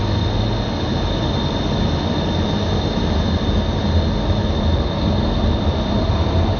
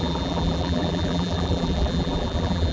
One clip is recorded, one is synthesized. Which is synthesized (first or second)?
second